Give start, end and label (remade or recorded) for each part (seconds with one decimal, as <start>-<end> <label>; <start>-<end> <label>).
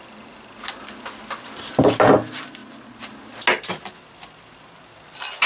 0.0-5.5 recorded